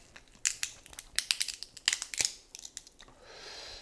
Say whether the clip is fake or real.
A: real